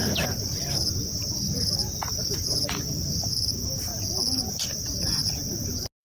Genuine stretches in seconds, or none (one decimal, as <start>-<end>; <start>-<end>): 3.9-4.5; 5.2-6.0